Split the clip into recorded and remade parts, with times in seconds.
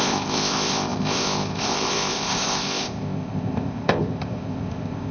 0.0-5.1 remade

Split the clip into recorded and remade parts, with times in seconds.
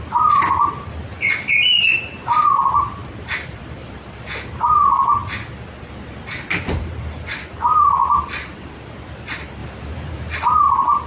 0.0-8.0 recorded; 8.0-8.7 remade; 8.7-9.6 recorded; 9.6-10.6 remade; 10.6-11.1 recorded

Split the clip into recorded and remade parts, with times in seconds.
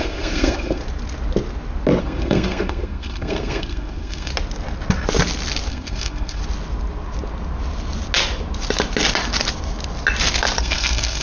0.0-0.8 remade; 0.8-2.0 recorded; 2.0-4.3 remade; 4.3-5.7 recorded; 5.7-6.4 remade; 6.4-10.6 recorded; 10.6-11.2 remade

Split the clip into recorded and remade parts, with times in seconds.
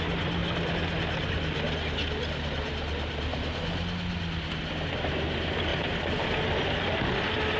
0.0-5.7 recorded; 5.7-6.3 remade; 6.3-7.6 recorded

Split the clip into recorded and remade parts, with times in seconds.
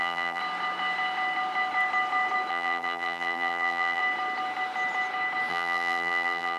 0.0-0.4 remade; 0.4-2.5 recorded; 2.5-4.0 remade; 4.0-5.5 recorded; 5.5-6.6 remade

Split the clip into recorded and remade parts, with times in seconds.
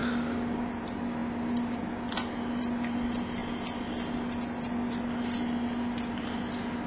0.0-0.7 remade; 0.7-6.9 recorded